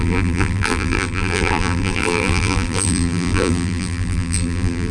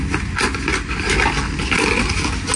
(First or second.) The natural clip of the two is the second